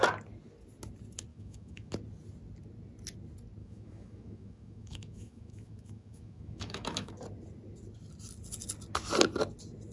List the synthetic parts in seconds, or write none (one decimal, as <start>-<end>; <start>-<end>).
1.3-1.9; 3.6-7.1